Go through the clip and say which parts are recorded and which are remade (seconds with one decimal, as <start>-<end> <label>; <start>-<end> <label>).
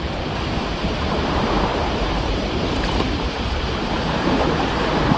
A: 0.0-5.2 remade